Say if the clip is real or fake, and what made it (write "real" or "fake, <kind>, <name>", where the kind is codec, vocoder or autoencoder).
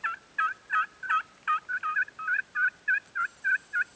real